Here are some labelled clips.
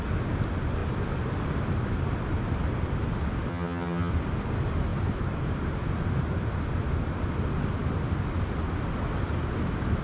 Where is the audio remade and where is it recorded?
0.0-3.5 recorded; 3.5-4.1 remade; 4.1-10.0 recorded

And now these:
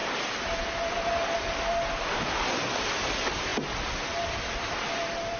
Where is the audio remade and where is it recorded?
0.0-5.4 recorded

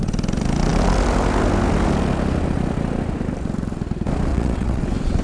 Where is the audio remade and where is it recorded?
0.0-4.3 recorded; 4.3-4.8 remade; 4.8-5.2 recorded

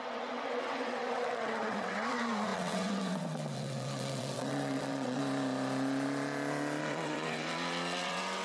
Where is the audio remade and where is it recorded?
0.0-5.2 remade; 5.2-6.8 recorded; 6.8-8.4 remade

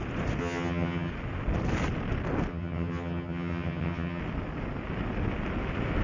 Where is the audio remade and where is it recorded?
0.0-0.4 recorded; 0.4-1.1 remade; 1.1-2.5 recorded; 2.5-4.2 remade; 4.2-6.0 recorded